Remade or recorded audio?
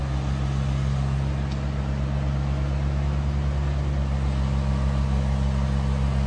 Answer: recorded